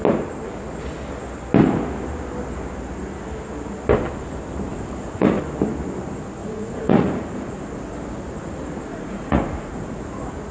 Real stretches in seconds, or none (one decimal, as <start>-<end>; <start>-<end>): 0.0-4.7; 5.4-6.4; 7.6-8.9; 10.0-10.5